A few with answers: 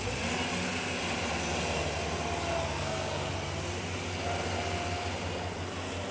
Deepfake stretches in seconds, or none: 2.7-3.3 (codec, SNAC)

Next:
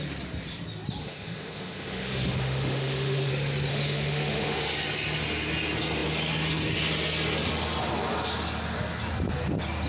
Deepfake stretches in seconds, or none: 1.0-3.3 (autoencoder, DAC-VAE); 3.7-4.7

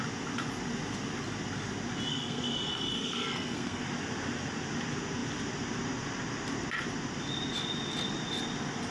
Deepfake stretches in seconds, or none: 2.1-3.8 (codec, SNAC)

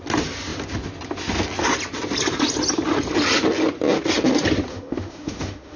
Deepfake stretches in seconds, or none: 4.7-5.8 (autoencoder, DAC-VAE)